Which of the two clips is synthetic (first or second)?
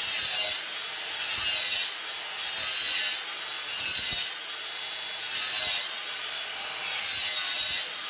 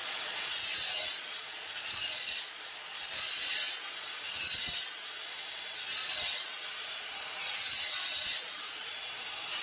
second